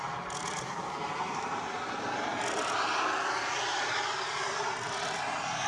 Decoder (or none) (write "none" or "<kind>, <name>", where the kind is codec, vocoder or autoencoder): none